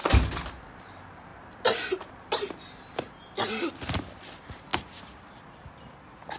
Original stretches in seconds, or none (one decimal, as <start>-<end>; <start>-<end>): 0.0-6.4